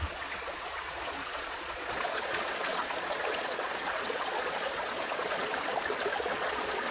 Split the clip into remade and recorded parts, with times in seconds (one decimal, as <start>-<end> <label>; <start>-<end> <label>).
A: 0.0-5.5 remade; 5.5-6.2 recorded; 6.2-6.9 remade

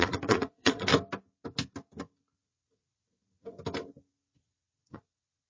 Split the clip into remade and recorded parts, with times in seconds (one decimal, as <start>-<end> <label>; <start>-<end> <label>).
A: 0.0-0.9 remade; 0.9-2.5 recorded; 2.5-2.9 remade; 2.9-4.3 recorded; 4.3-5.5 remade

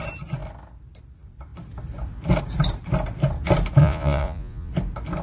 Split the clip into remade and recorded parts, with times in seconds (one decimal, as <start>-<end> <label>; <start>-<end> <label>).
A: 0.0-3.8 recorded; 3.8-4.7 remade; 4.7-5.2 recorded

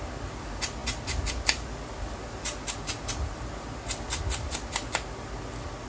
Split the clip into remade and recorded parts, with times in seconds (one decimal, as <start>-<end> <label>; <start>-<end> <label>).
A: 0.0-5.9 recorded

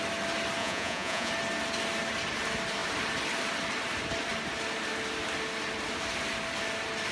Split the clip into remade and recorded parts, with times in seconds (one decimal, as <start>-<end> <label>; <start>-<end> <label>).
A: 0.0-0.6 recorded; 0.6-1.3 remade; 1.3-7.1 recorded

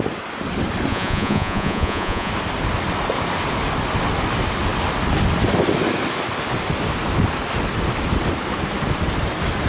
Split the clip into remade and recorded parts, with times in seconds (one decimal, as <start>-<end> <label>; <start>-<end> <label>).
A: 0.0-0.9 recorded; 0.9-2.3 remade; 2.3-9.7 recorded